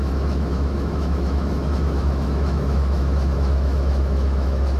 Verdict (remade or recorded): remade